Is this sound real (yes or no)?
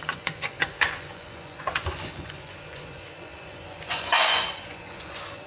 no